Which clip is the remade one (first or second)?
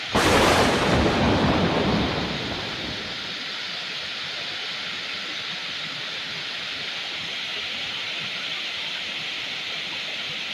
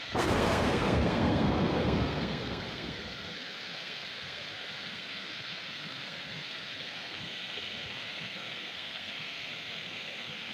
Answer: second